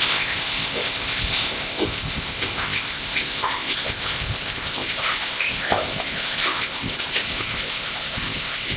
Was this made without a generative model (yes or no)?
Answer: no